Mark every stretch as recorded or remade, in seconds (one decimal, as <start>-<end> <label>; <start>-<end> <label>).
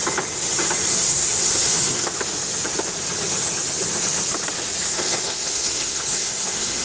0.0-0.9 recorded; 0.9-2.1 remade; 2.1-4.9 recorded; 4.9-6.8 remade